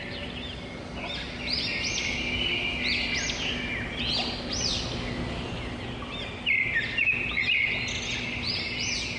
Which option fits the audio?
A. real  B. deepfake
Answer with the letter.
A